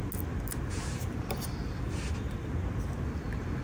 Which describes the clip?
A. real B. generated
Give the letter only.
A